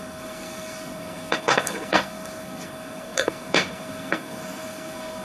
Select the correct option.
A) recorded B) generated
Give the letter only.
B